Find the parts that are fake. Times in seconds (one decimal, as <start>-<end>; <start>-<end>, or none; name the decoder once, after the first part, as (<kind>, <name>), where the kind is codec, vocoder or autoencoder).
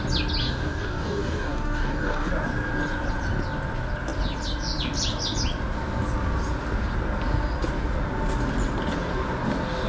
0.4-2.3 (codec, DAC)